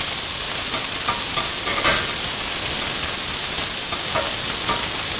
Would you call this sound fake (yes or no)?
no